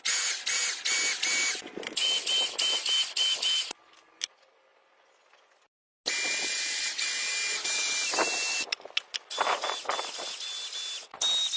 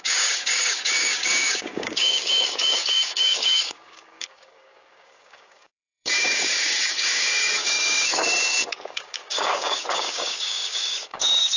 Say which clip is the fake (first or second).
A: second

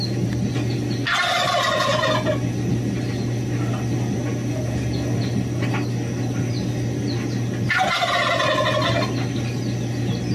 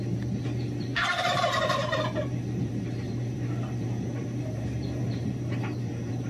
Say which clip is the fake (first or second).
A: second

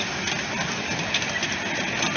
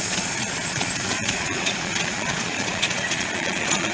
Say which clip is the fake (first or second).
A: second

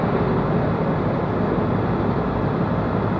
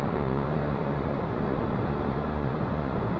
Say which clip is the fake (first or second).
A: second